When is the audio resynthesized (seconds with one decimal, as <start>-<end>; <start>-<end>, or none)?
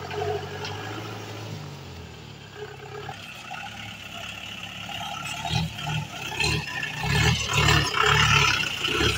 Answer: none